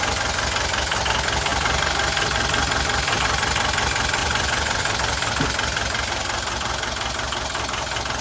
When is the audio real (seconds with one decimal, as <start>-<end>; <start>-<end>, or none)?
0.0-4.2; 4.8-8.2